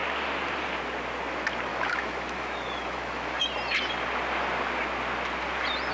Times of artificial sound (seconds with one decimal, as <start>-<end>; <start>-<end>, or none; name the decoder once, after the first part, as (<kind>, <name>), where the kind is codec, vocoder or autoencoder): 1.7-3.4 (autoencoder, DAC-VAE)